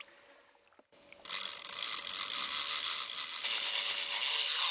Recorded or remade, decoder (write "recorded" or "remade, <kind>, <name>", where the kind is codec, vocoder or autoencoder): recorded